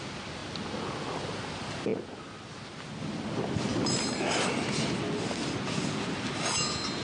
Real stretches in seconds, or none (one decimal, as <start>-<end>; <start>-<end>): 0.0-7.0